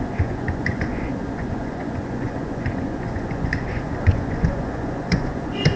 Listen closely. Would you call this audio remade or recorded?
remade